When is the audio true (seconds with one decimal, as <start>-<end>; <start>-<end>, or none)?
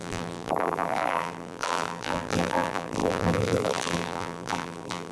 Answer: none